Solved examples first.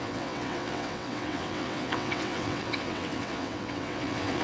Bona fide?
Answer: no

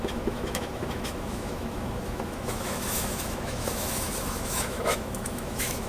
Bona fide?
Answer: no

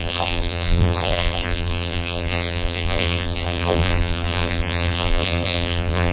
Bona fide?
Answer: no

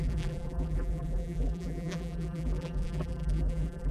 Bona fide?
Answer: no